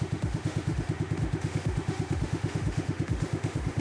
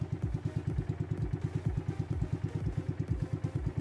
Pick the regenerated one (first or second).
first